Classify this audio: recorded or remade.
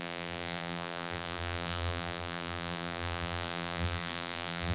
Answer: remade